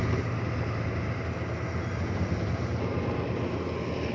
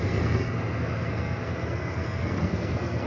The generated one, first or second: second